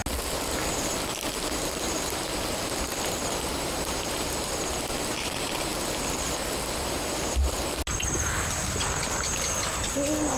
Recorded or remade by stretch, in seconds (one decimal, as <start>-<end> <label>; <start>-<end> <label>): 0.0-10.4 recorded